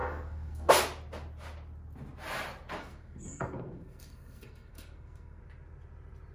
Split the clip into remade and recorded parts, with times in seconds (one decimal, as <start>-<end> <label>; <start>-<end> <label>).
0.0-0.7 remade; 0.7-2.8 recorded; 2.8-5.4 remade; 5.4-6.3 recorded